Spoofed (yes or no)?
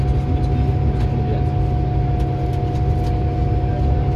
no